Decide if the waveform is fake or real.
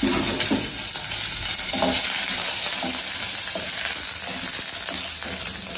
real